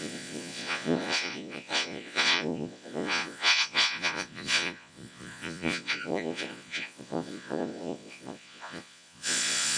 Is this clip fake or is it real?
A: fake